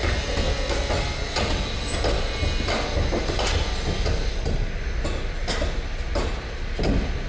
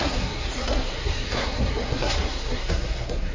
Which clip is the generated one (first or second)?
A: second